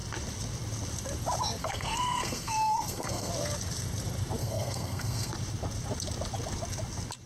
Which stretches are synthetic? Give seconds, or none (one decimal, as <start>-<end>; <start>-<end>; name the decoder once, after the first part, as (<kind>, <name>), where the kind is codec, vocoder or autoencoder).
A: 1.6-3.3 (codec, SNAC); 4.4-5.3